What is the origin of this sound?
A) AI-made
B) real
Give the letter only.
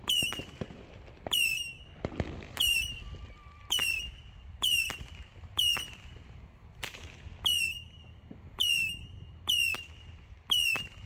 B